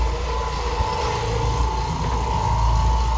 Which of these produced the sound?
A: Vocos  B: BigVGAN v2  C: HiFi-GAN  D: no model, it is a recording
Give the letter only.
D